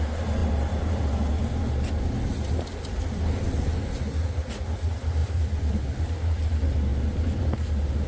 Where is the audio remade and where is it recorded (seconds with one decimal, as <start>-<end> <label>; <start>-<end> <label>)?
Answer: 0.0-8.1 recorded